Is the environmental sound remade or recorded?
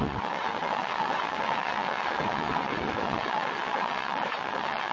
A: remade